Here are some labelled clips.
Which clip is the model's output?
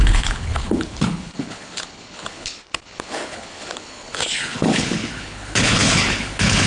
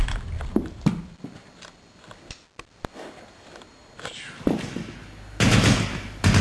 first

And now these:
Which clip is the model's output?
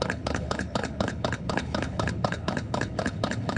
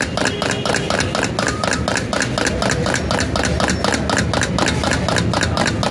first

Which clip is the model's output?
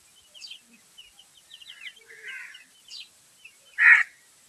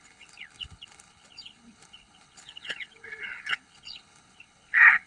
second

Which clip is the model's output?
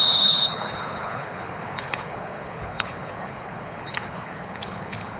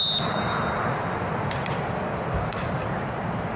first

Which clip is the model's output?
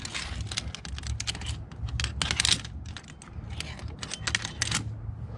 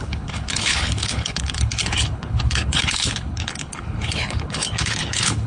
second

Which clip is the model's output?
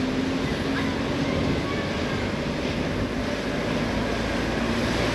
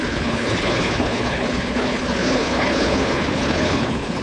second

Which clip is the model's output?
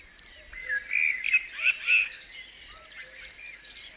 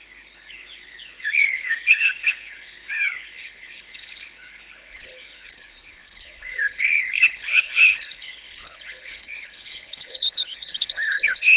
second